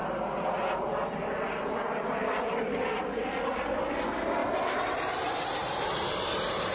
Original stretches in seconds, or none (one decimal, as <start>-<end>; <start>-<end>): 0.0-4.4; 5.1-5.6